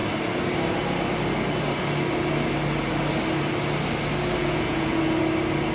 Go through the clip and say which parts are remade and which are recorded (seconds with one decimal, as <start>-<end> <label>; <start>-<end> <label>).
0.0-4.4 recorded; 4.4-5.0 remade; 5.0-5.7 recorded